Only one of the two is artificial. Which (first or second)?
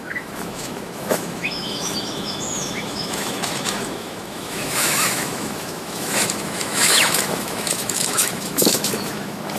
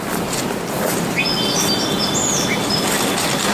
first